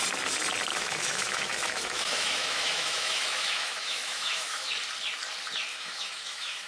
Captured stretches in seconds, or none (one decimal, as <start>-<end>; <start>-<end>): 0.0-0.7; 4.7-5.7